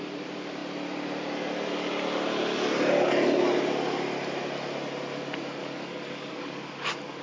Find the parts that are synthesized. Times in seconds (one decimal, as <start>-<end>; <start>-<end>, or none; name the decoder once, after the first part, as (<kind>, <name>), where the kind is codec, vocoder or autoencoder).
5.6-7.2 (codec, DAC)